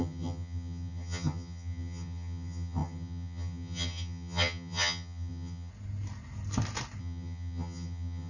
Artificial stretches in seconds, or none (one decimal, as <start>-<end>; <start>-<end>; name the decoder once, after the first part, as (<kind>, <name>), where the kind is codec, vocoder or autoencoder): 0.0-5.7 (vocoder, HiFi-GAN); 7.0-8.3